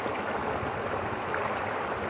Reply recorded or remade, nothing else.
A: recorded